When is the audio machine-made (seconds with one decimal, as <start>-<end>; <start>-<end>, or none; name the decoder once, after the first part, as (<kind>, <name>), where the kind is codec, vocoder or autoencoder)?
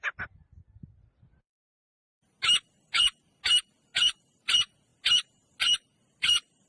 none